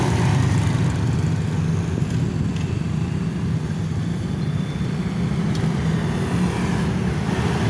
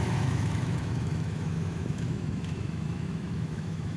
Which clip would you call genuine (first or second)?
first